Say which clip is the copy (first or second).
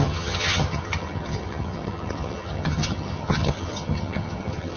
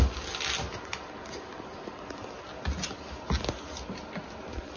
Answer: first